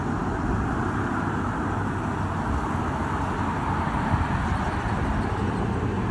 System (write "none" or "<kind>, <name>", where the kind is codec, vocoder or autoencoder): none